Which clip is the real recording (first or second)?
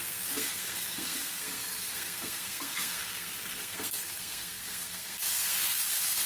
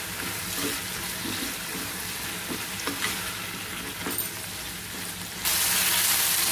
second